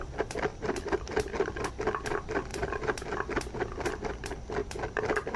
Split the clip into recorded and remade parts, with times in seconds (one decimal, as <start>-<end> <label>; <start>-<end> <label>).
0.0-0.5 recorded; 0.5-1.7 remade; 1.7-4.6 recorded; 4.6-5.4 remade

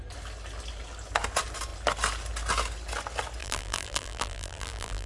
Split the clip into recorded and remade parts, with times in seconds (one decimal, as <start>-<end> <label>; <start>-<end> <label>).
0.0-3.4 recorded; 3.4-5.1 remade